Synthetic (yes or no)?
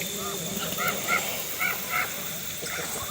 no